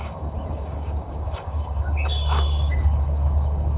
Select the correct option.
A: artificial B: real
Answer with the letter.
A